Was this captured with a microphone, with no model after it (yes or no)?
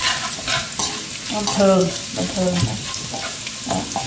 yes